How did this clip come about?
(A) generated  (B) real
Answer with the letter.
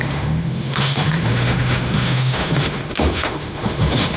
A